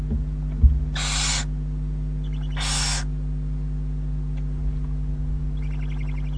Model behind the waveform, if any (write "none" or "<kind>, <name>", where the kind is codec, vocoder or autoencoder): none